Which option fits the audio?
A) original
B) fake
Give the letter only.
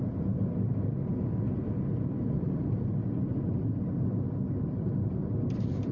B